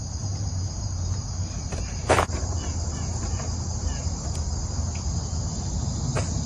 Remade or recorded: remade